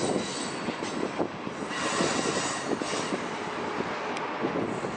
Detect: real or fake real